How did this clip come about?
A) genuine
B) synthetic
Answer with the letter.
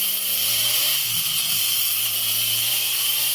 A